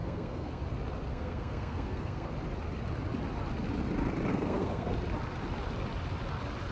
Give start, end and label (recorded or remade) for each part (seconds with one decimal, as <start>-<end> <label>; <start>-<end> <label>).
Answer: 0.0-0.6 remade; 0.6-1.1 recorded; 1.1-2.3 remade; 2.3-4.3 recorded; 4.3-4.9 remade; 4.9-6.7 recorded